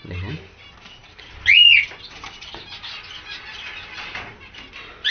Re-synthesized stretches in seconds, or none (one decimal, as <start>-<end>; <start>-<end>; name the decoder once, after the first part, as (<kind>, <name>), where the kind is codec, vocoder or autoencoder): none